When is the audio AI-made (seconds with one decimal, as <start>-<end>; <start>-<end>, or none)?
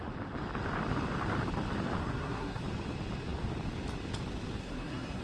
2.0-2.6; 4.6-5.2